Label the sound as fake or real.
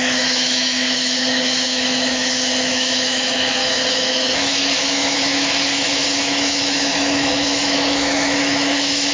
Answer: fake